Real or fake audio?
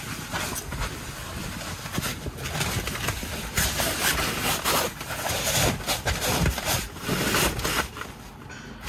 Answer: real